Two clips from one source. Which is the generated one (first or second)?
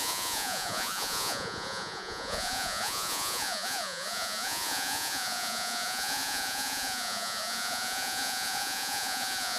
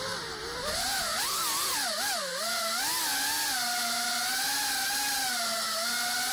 first